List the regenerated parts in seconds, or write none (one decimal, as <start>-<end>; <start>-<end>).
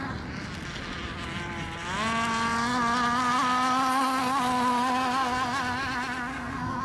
6.3-6.8